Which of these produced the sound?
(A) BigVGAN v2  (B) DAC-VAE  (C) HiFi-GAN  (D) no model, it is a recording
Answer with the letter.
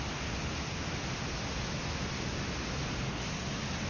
D